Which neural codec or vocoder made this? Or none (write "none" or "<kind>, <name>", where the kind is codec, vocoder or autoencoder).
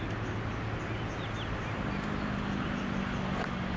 none